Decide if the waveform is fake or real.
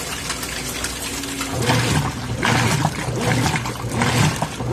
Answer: real